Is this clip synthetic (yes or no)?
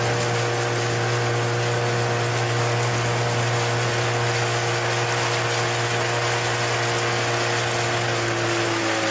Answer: no